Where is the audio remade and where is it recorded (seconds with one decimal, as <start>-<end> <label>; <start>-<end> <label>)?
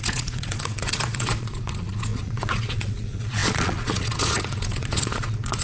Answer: 0.0-5.6 remade